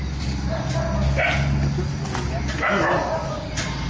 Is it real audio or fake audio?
real